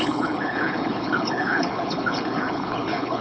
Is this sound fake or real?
fake